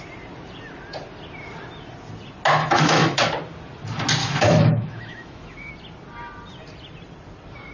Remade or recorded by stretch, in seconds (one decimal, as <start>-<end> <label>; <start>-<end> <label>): 0.0-2.6 recorded; 2.6-3.2 remade; 3.2-4.2 recorded; 4.2-5.7 remade; 5.7-7.7 recorded